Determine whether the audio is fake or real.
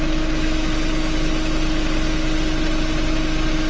real